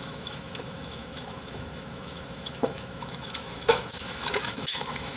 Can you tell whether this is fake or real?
fake